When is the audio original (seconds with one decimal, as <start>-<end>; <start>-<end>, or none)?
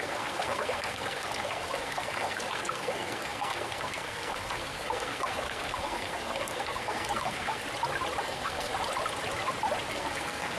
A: 7.6-8.2; 8.7-9.9